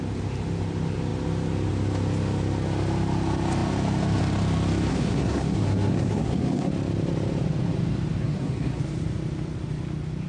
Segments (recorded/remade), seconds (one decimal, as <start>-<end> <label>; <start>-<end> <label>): 0.0-4.9 recorded; 4.9-6.7 remade; 6.7-8.2 recorded; 8.2-8.8 remade; 8.8-10.3 recorded